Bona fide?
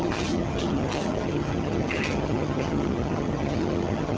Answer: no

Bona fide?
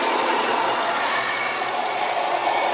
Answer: no